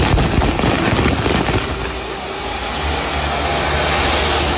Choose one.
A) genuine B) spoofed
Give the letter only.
A